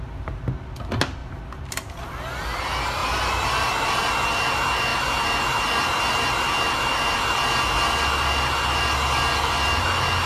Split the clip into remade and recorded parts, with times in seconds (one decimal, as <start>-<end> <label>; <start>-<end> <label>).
0.0-1.2 recorded; 1.2-1.9 remade; 1.9-3.0 recorded; 3.0-4.1 remade; 4.1-10.3 recorded